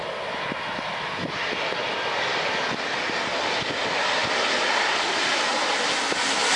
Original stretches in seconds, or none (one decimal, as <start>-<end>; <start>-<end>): 0.0-6.6